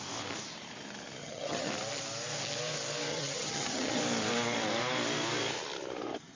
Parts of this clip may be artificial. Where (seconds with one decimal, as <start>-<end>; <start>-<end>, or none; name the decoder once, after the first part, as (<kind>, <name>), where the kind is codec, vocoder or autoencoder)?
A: 1.2-1.7 (vocoder, HiFi-GAN); 3.1-4.0